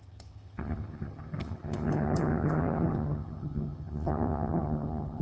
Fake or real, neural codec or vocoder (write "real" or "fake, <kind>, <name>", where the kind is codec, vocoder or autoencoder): fake, vocoder, HiFi-GAN